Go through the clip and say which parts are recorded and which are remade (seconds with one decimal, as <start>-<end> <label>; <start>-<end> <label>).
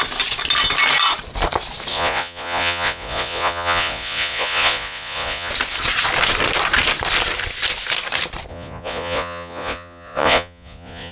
0.0-1.9 recorded; 1.9-5.5 remade; 5.5-8.5 recorded; 8.5-11.1 remade